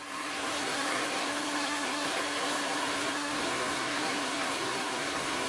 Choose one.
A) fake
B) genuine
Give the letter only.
A